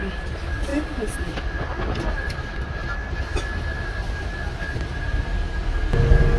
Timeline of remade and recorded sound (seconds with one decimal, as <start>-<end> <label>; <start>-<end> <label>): 0.0-6.4 recorded